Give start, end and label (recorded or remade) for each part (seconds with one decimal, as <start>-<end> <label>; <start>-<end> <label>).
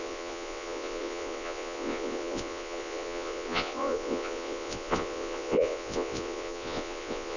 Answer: 0.0-7.4 remade